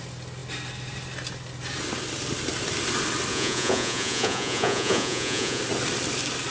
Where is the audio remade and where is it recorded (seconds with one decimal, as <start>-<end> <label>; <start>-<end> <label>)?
0.0-3.3 recorded; 3.3-5.6 remade; 5.6-6.5 recorded